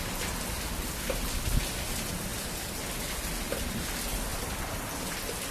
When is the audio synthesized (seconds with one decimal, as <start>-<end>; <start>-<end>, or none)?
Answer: none